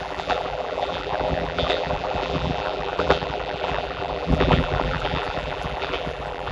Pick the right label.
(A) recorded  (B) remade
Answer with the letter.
B